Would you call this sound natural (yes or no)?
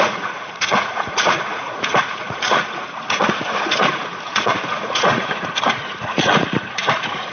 no